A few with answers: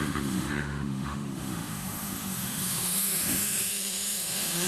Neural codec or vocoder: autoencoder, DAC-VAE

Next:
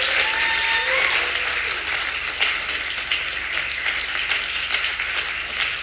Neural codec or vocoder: none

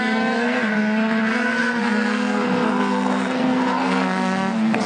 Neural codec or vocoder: codec, SNAC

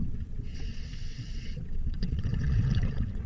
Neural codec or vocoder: vocoder, WaveNeXt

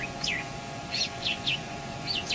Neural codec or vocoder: vocoder, Vocos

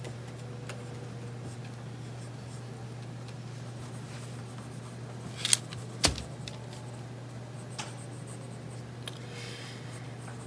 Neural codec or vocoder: none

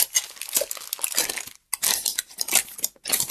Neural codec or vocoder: none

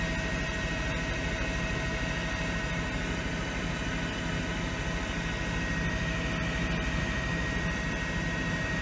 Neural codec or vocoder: none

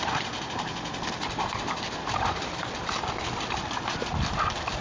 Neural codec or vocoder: none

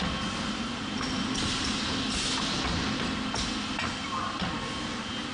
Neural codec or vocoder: none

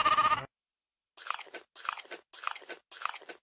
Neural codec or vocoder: none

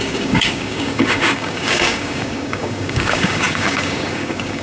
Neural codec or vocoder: codec, DAC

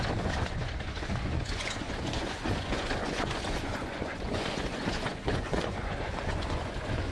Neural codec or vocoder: vocoder, Vocos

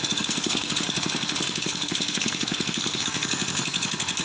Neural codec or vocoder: codec, SNAC